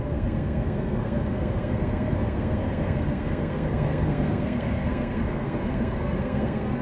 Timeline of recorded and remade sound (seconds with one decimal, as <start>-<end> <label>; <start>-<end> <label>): 0.0-6.8 remade